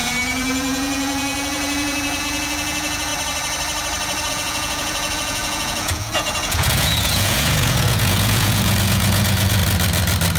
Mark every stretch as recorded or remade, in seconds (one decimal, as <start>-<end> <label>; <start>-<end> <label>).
0.0-3.1 remade; 3.1-4.3 recorded; 4.3-9.6 remade; 9.6-10.4 recorded